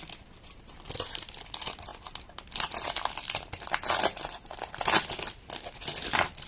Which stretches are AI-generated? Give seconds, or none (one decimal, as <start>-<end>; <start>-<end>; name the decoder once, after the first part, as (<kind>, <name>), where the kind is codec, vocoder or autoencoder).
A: none